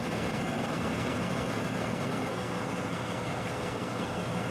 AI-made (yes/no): yes